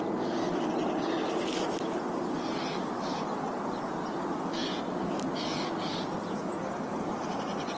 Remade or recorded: recorded